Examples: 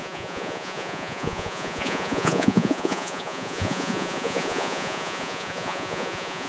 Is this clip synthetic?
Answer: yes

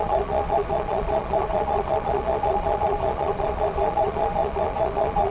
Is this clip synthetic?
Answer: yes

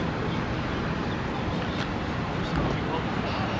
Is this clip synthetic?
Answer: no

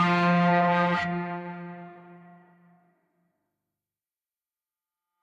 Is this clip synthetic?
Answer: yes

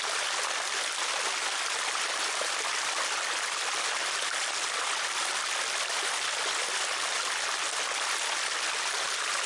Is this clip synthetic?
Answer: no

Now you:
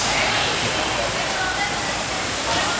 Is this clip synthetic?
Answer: yes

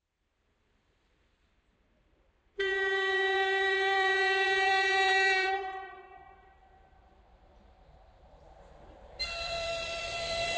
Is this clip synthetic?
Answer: yes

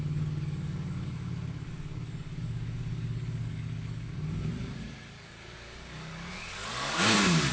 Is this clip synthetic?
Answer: yes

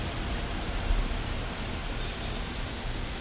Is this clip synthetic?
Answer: no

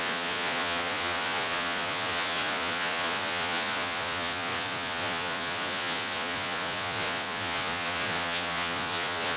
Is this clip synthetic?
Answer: yes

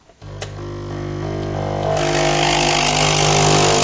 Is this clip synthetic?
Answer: no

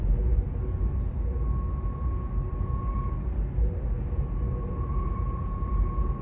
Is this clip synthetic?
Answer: no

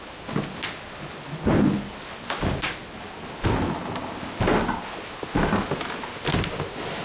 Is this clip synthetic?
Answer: no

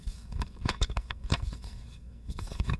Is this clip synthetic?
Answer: yes